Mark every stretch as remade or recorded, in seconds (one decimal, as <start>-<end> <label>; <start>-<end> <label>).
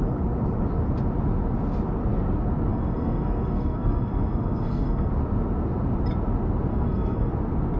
0.0-2.7 recorded; 2.7-5.1 remade; 5.1-6.7 recorded; 6.7-7.3 remade; 7.3-7.8 recorded